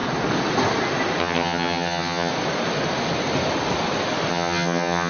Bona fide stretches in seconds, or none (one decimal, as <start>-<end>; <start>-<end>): 0.0-1.2; 2.3-4.3